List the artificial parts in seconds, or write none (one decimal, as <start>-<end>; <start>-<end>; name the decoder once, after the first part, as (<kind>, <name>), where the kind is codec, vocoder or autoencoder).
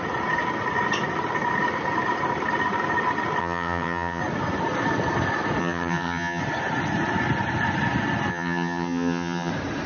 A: 3.4-4.2 (vocoder, HiFi-GAN); 5.6-6.4; 8.3-9.5